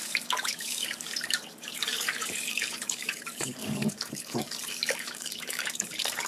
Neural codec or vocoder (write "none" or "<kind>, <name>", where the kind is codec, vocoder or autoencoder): codec, DAC